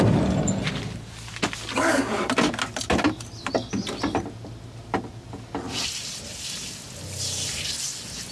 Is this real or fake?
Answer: real